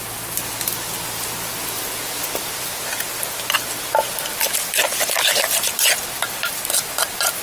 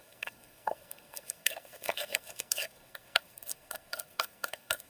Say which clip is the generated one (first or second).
second